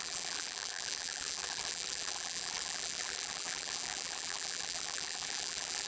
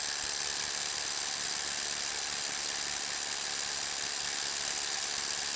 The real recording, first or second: second